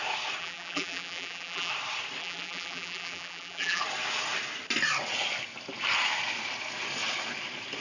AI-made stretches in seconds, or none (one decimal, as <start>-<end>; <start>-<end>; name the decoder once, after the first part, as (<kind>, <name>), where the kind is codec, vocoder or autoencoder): 0.4-1.7 (vocoder, BigVGAN v2); 2.2-3.8